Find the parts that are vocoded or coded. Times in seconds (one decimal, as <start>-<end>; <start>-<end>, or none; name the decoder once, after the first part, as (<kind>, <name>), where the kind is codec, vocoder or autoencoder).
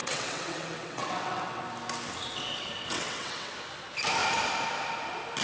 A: 0.0-1.6 (vocoder, WaveNeXt); 2.9-3.5